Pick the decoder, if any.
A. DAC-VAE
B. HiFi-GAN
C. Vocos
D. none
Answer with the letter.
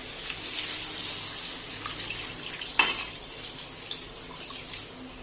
D